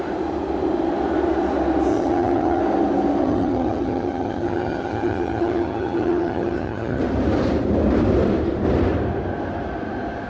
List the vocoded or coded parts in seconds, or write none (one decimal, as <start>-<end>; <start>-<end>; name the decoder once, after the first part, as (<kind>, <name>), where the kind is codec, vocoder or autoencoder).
1.9-2.6 (vocoder, HiFi-GAN); 3.2-7.0